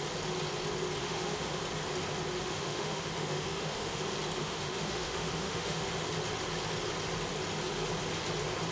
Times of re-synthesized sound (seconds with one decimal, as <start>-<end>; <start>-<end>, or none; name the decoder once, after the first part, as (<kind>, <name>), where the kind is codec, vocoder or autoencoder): 1.0-1.6 (autoencoder, DAC-VAE); 2.4-4.0; 4.4-5.9